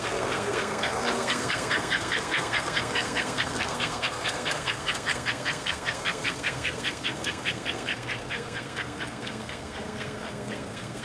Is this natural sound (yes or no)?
no